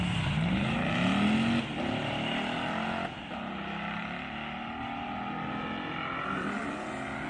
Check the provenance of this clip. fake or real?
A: real